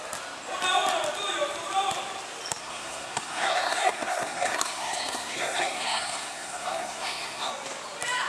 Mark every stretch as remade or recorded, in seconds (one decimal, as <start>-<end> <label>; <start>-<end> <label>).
0.0-2.6 recorded; 2.6-7.5 remade; 7.5-8.3 recorded